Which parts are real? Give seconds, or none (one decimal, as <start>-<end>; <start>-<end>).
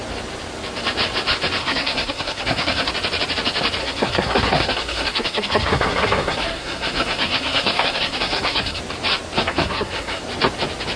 0.0-1.6; 2.9-3.8; 8.8-9.4; 10.2-11.0